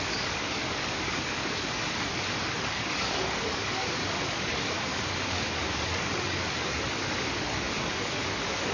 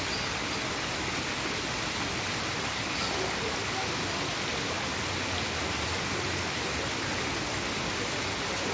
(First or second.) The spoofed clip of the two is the first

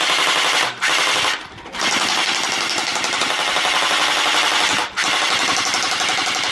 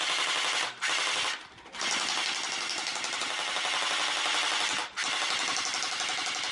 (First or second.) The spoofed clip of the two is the first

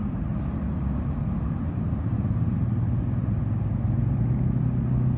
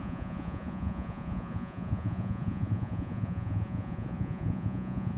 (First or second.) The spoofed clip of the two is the second